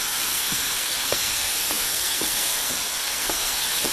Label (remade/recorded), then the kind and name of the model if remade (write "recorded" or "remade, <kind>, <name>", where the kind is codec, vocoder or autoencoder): remade, codec, SNAC